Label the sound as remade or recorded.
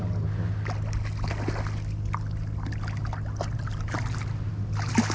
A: recorded